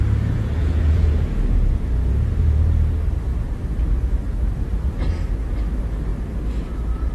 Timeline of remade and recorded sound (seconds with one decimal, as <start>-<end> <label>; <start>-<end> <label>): 0.0-0.6 recorded; 0.6-1.4 remade; 1.4-7.1 recorded